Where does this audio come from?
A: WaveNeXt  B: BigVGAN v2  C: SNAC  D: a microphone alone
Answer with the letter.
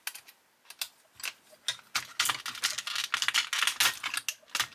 D